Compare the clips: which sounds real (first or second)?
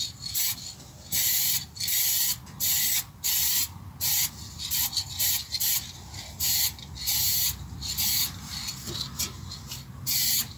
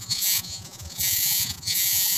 first